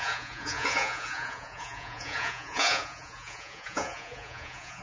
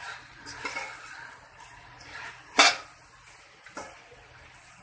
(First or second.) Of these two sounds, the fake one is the first